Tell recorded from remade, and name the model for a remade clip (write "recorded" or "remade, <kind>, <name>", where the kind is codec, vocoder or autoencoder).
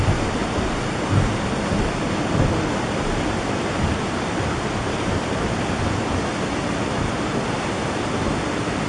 recorded